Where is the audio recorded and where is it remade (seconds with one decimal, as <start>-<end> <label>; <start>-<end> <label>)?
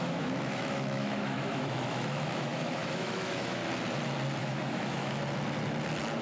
0.0-3.6 remade; 3.6-4.4 recorded; 4.4-5.2 remade; 5.2-6.2 recorded